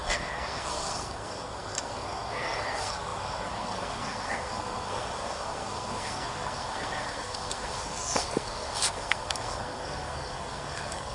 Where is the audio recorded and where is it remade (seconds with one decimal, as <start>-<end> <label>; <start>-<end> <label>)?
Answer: 0.0-11.1 remade